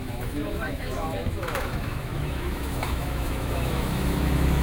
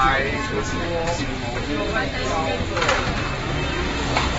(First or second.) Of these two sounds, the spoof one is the first